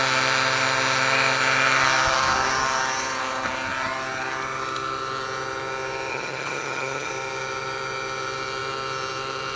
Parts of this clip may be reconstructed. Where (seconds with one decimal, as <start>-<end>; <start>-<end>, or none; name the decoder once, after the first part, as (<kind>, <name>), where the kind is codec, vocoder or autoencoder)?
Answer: 6.1-7.1 (vocoder, HiFi-GAN)